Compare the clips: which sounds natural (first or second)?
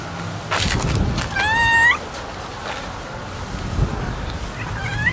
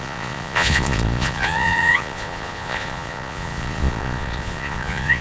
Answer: first